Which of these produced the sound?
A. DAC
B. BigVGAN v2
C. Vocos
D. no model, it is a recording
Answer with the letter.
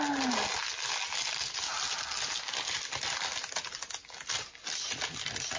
D